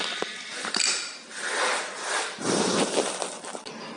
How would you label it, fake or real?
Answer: real